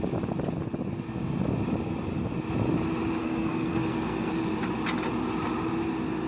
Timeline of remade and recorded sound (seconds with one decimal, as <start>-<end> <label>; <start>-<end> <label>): 0.0-3.2 recorded; 3.2-4.3 remade; 4.3-6.3 recorded